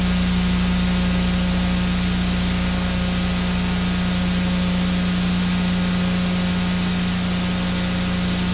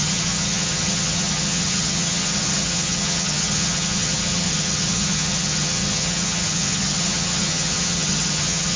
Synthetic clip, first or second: second